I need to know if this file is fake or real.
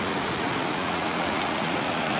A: fake